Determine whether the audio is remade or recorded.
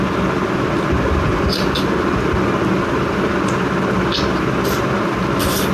recorded